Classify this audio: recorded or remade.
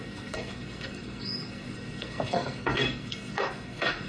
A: remade